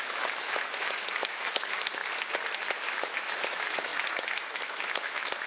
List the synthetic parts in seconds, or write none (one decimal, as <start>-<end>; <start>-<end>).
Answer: 0.0-2.0; 2.8-5.5